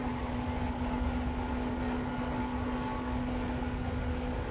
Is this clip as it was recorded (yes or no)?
no